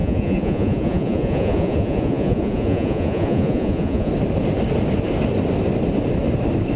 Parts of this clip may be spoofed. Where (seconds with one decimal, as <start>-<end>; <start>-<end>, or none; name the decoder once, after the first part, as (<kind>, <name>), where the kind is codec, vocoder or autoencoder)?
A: 0.0-4.1 (vocoder, Vocos)